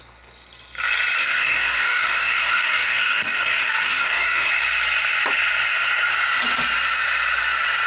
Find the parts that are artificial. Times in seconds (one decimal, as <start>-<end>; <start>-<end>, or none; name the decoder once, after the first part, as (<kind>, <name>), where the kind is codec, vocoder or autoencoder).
1.2-4.5 (codec, DAC)